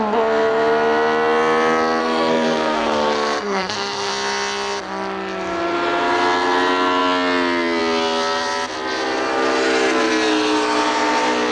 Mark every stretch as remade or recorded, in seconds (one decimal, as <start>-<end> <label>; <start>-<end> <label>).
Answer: 0.0-2.0 recorded; 2.0-4.1 remade; 4.1-11.5 recorded